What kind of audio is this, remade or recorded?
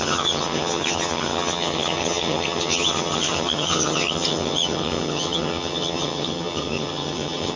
remade